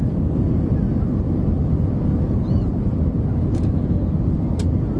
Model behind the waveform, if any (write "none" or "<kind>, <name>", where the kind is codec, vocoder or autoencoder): none